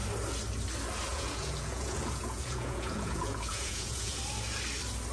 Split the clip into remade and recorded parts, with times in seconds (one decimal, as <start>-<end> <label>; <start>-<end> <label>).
0.0-1.1 recorded; 1.1-4.2 remade; 4.2-5.1 recorded